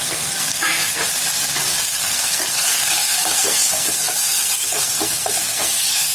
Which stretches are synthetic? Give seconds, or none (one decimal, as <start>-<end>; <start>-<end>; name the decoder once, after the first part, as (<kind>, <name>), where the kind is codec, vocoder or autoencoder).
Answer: 0.0-1.0 (codec, SNAC); 1.8-6.1